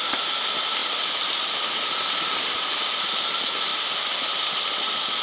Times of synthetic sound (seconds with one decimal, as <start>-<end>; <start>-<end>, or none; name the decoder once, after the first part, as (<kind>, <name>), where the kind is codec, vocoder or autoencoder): none